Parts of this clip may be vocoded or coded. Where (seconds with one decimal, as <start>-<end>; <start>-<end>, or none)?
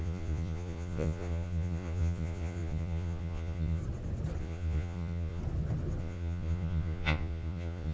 0.0-3.8; 4.4-5.4; 6.0-7.9